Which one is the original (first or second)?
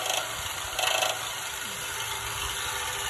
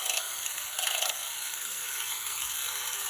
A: first